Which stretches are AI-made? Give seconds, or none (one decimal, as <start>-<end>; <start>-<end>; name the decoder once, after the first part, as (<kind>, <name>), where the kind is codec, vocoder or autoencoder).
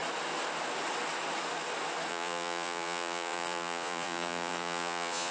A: 2.1-5.3 (vocoder, Vocos)